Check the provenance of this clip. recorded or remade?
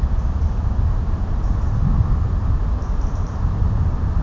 recorded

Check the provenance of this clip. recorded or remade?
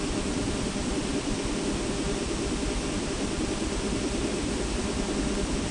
recorded